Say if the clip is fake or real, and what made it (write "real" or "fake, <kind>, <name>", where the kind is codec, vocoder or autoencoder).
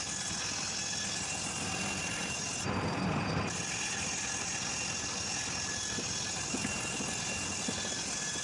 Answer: real